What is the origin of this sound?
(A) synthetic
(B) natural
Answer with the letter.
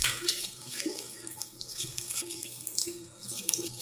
A